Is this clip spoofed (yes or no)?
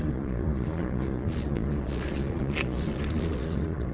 yes